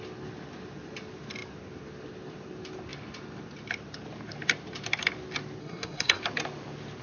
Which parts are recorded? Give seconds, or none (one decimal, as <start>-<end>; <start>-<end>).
0.0-5.6; 6.2-7.0